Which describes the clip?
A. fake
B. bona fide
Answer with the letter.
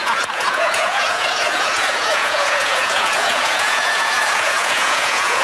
A